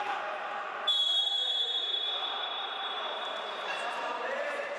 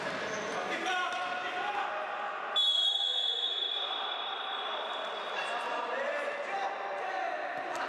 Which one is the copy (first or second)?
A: first